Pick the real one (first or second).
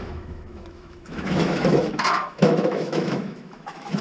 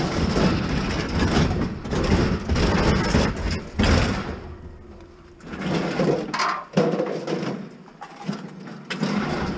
second